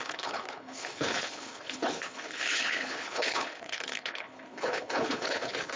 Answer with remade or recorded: remade